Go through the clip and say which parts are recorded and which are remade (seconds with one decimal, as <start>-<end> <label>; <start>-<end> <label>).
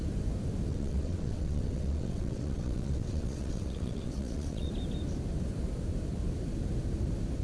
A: 0.0-0.7 recorded; 0.7-4.7 remade; 4.7-7.4 recorded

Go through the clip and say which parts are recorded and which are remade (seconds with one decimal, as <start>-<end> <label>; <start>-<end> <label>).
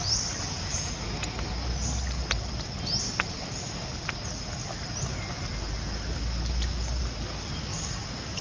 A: 0.0-8.4 recorded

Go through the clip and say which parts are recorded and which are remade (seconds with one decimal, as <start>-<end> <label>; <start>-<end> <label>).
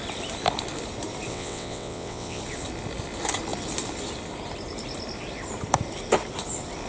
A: 0.0-1.3 recorded; 1.3-2.4 remade; 2.4-6.9 recorded